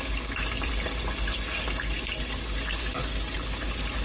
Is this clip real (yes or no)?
yes